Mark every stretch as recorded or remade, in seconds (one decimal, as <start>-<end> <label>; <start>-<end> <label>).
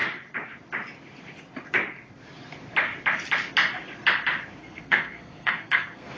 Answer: 0.0-4.6 recorded; 4.6-6.2 remade